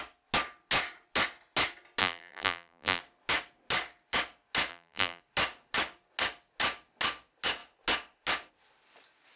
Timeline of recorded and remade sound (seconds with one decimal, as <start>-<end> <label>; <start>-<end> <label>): 0.0-2.0 recorded; 2.0-3.0 remade; 3.0-4.7 recorded; 4.7-5.2 remade; 5.2-9.4 recorded